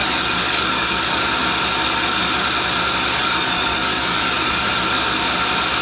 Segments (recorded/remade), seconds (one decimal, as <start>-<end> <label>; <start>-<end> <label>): 0.0-1.2 remade; 1.2-3.2 recorded; 3.2-4.7 remade; 4.7-5.8 recorded